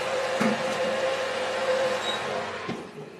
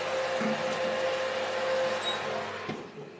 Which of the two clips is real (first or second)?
second